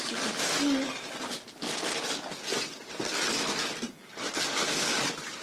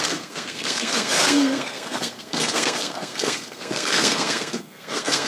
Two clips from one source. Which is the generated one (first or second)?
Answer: second